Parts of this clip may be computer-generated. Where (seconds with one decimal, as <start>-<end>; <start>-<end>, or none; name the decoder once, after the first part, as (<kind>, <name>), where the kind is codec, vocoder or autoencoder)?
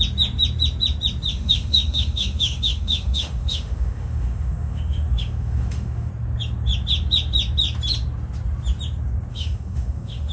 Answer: 1.3-6.1 (autoencoder, DAC-VAE); 9.3-10.3